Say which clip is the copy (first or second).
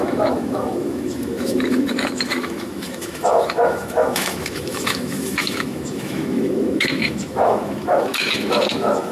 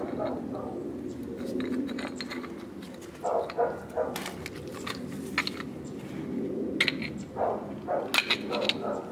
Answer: first